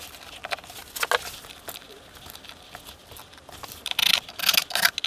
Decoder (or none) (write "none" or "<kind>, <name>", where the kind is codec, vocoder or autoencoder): none